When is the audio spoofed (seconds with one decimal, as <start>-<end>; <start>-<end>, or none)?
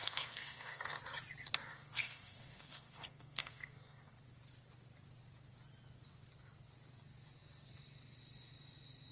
0.0-1.0; 1.7-4.1